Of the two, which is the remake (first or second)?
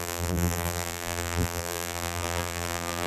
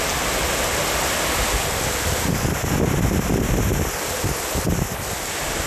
first